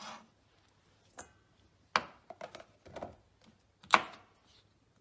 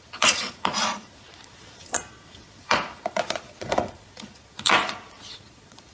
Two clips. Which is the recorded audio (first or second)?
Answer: first